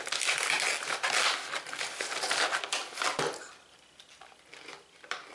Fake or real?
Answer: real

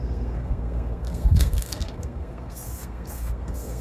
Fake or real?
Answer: fake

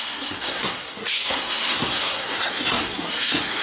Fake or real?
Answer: fake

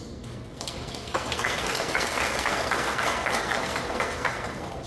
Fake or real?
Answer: fake